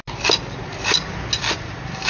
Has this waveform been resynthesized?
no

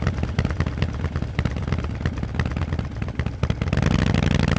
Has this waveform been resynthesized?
no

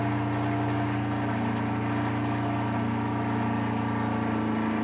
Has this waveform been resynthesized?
no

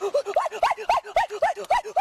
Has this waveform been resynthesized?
no